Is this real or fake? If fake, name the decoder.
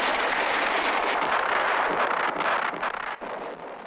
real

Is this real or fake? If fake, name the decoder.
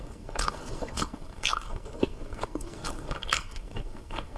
fake, codec, SNAC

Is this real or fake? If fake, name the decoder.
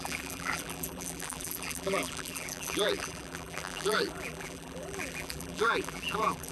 fake, vocoder, BigVGAN v2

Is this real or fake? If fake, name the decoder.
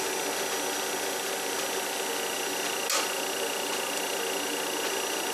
real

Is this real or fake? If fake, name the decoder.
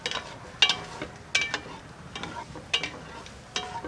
real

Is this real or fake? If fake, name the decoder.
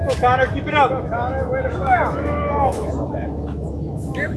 fake, autoencoder, DAC-VAE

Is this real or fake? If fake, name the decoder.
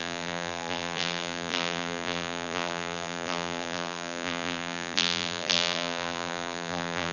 fake, vocoder, BigVGAN v2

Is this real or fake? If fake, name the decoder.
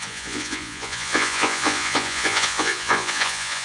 fake, vocoder, Vocos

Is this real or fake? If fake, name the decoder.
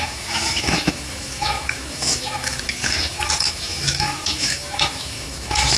fake, autoencoder, DAC-VAE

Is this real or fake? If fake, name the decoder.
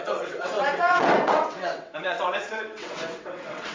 fake, vocoder, WaveNeXt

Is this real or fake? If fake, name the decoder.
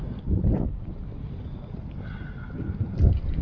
fake, vocoder, BigVGAN v2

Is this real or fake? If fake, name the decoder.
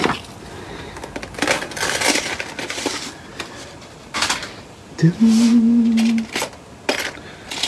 real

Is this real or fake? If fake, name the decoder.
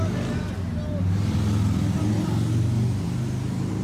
real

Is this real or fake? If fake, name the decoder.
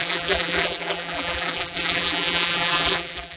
fake, vocoder, BigVGAN v2